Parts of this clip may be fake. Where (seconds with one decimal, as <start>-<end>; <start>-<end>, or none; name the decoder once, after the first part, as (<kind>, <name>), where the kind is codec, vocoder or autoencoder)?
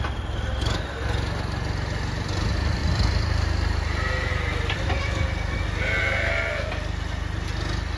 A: 6.0-6.7 (codec, SNAC)